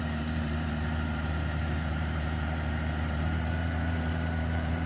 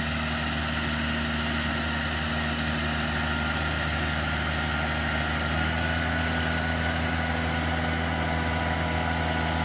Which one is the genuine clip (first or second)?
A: second